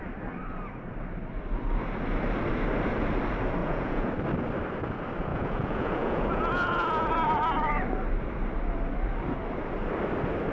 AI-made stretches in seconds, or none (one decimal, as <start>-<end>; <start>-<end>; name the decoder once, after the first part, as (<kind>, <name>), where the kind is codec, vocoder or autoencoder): 3.6-4.1 (vocoder, Vocos); 5.3-7.1